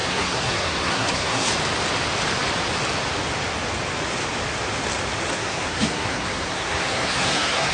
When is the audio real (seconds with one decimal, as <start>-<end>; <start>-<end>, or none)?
1.5-5.3